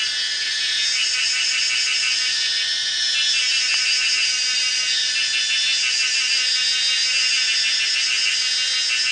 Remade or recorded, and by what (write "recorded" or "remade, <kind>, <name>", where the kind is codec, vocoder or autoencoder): recorded